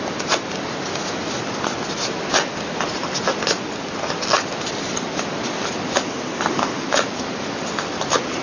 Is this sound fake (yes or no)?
no